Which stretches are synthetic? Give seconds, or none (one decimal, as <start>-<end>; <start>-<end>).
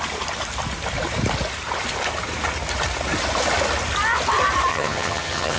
4.7-5.6